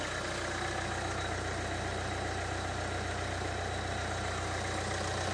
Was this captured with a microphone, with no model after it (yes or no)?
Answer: yes